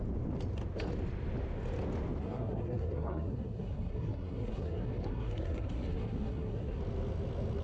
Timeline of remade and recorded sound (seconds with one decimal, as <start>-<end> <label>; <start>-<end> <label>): 0.0-2.2 recorded; 2.2-6.8 remade; 6.8-7.6 recorded

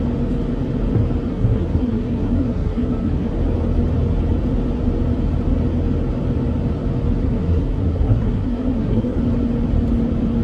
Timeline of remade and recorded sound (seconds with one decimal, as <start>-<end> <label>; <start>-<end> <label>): 0.0-1.3 recorded; 1.3-3.3 remade; 3.3-7.2 recorded; 7.2-9.2 remade; 9.2-10.4 recorded

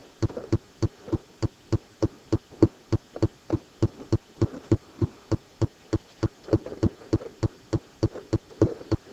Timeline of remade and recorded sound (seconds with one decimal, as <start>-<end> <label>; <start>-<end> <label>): 0.0-4.4 recorded; 4.4-5.7 remade; 5.7-8.5 recorded; 8.5-9.1 remade

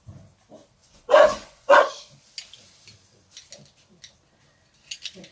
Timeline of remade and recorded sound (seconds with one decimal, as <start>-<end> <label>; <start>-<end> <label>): 0.0-0.8 recorded; 0.8-1.8 remade; 1.8-5.3 recorded

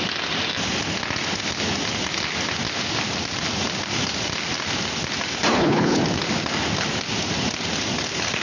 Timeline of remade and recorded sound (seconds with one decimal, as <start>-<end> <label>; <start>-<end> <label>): 0.0-5.5 recorded; 5.5-6.0 remade; 6.0-8.4 recorded

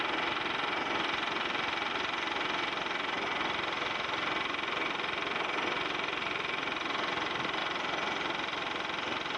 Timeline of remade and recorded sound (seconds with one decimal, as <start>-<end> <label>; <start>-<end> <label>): 0.0-9.4 recorded